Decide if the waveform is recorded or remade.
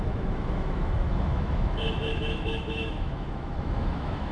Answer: remade